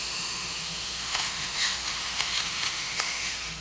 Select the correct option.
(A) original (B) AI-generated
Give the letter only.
B